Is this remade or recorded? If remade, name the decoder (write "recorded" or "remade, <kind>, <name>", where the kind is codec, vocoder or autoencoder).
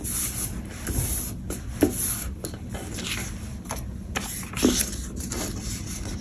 recorded